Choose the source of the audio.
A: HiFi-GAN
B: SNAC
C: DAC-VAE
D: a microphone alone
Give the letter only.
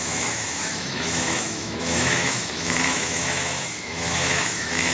C